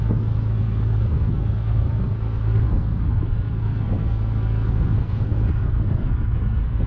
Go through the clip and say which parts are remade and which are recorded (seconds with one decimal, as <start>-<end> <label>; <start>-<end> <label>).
0.0-6.9 remade